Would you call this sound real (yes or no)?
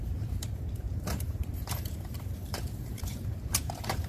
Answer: no